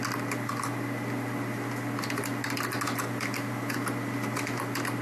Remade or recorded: recorded